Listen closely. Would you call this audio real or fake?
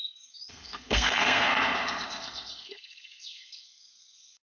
fake